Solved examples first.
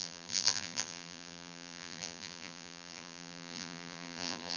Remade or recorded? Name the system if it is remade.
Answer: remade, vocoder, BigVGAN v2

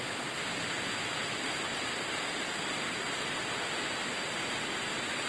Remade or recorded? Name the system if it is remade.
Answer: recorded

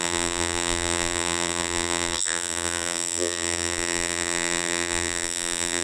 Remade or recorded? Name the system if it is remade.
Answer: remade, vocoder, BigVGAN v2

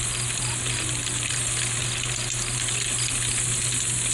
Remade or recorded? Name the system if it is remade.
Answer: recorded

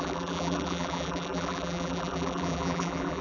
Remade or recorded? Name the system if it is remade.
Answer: remade, vocoder, BigVGAN v2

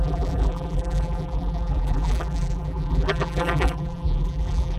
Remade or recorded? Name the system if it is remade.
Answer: remade, vocoder, BigVGAN v2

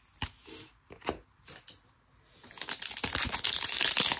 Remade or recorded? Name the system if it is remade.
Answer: recorded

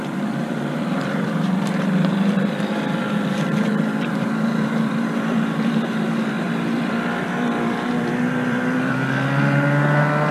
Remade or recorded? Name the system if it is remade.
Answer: remade, vocoder, BigVGAN v2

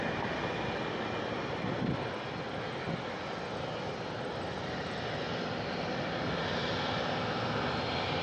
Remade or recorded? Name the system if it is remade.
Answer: recorded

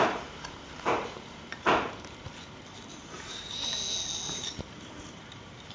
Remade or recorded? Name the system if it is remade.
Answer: remade, vocoder, BigVGAN v2